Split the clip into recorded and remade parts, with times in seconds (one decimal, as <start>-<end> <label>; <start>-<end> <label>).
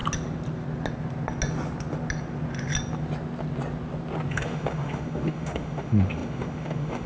0.0-4.3 recorded; 4.3-7.1 remade